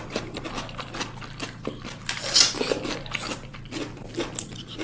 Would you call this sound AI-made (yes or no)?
no